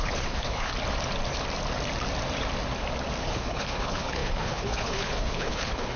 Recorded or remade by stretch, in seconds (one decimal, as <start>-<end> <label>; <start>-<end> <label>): 0.0-0.7 remade; 0.7-3.2 recorded; 3.2-6.0 remade